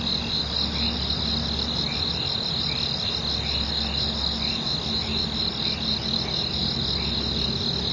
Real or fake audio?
real